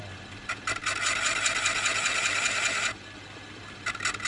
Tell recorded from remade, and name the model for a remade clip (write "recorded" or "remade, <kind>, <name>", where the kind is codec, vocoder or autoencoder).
recorded